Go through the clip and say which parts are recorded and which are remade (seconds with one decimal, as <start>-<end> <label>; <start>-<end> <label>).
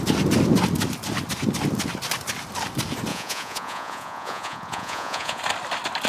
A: 0.0-3.1 recorded; 3.1-5.4 remade; 5.4-6.1 recorded